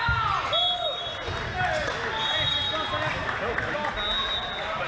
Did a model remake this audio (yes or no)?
no